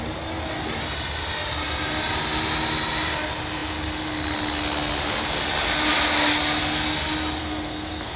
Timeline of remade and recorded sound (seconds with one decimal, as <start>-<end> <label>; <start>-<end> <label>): 0.0-7.4 recorded; 7.4-8.2 remade